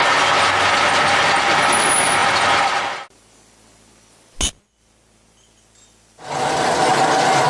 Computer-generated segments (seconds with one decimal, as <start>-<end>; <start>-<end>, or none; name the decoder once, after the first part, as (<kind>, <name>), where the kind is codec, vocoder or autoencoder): none